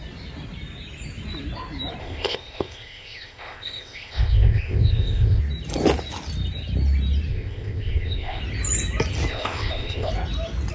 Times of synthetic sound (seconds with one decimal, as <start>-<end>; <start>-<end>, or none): 2.0-5.4; 7.3-8.4; 9.3-10.1